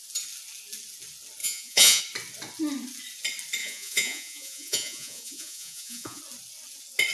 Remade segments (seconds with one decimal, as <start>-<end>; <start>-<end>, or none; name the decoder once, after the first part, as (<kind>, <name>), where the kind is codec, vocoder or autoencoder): 1.4-2.0 (vocoder, Vocos); 3.6-6.2